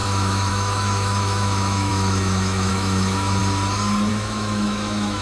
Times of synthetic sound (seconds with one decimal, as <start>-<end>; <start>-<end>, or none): 0.0-3.4; 4.1-5.2